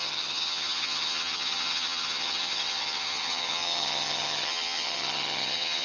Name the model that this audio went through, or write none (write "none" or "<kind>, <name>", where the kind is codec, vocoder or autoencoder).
vocoder, HiFi-GAN